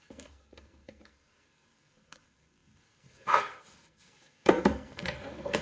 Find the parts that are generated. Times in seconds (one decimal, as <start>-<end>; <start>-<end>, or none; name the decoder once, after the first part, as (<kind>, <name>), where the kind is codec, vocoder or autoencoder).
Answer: 0.0-5.6 (codec, SNAC)